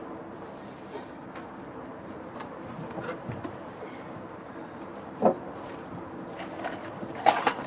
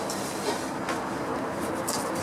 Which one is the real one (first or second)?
second